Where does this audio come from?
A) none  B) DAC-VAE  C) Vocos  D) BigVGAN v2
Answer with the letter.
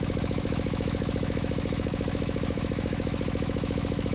B